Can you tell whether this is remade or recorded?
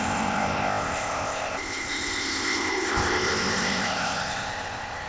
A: remade